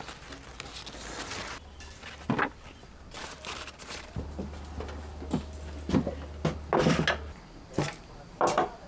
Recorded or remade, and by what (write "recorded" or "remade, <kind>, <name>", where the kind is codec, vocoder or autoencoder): recorded